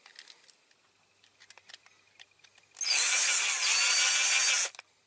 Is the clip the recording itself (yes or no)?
yes